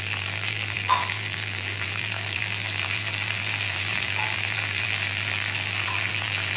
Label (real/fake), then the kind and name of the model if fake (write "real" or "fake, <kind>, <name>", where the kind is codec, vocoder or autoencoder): fake, vocoder, BigVGAN v2